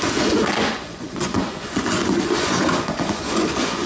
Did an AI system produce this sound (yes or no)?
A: yes